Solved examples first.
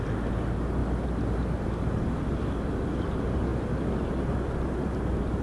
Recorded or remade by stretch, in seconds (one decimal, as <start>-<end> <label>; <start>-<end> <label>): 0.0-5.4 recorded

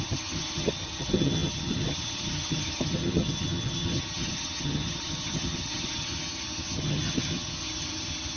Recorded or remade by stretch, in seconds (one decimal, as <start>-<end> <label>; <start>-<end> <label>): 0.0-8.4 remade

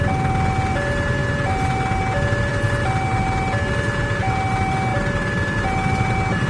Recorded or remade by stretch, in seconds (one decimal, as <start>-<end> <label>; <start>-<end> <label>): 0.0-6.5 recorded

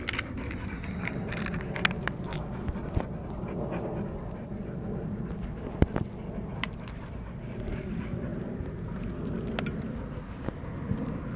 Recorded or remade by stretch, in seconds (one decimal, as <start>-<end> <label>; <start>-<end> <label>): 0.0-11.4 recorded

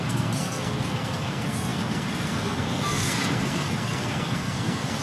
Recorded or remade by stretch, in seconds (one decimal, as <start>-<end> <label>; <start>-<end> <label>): 0.0-5.0 remade

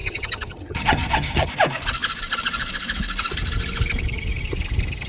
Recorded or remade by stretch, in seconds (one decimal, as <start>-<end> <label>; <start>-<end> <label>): 0.0-1.5 remade; 1.5-5.1 recorded

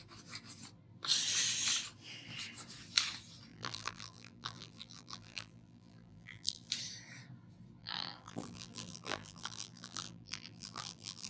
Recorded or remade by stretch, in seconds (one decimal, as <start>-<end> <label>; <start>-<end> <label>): 0.0-3.5 recorded; 3.5-6.7 remade; 6.7-7.8 recorded; 7.8-11.3 remade

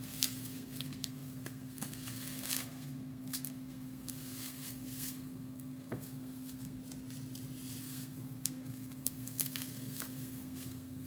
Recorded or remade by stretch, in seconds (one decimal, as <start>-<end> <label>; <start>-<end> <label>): 0.0-6.8 remade; 6.8-7.8 recorded; 7.8-11.1 remade